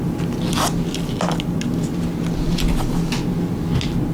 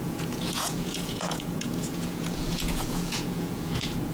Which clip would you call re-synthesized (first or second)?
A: second